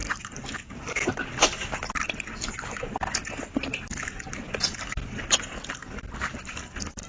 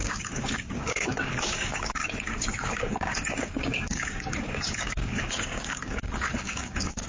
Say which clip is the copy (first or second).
second